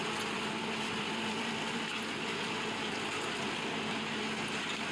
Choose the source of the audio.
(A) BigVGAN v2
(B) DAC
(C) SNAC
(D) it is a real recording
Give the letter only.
A